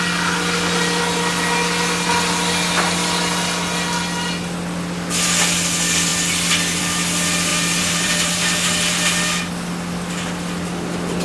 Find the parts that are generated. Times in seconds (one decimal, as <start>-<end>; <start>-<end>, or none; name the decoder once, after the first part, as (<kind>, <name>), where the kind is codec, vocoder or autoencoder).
7.5-8.3 (vocoder, BigVGAN v2)